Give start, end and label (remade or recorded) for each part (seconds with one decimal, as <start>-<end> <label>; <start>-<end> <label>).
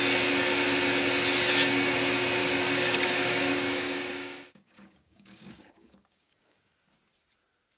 0.0-2.4 recorded; 2.4-6.7 remade; 6.7-7.8 recorded